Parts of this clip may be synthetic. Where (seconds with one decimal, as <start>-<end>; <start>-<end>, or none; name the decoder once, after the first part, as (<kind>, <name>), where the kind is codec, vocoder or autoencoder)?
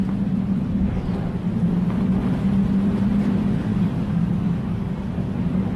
3.7-5.3 (codec, DAC)